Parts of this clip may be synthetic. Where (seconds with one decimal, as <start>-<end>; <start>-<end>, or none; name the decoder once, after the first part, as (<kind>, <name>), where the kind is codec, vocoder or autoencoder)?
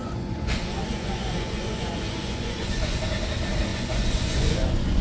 0.0-3.0 (vocoder, Vocos); 3.7-5.0